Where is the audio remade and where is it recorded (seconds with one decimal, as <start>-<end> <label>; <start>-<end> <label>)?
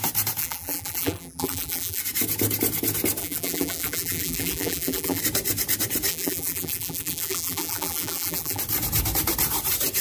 0.0-0.4 recorded; 0.4-2.0 remade; 2.0-3.2 recorded; 3.2-5.2 remade; 5.2-6.1 recorded; 6.1-8.6 remade; 8.6-10.0 recorded